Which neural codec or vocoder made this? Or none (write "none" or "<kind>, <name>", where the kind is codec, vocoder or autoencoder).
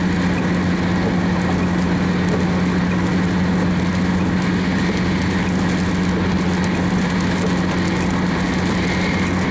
none